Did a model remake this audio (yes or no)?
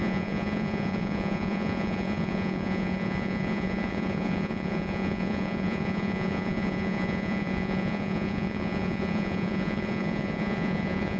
yes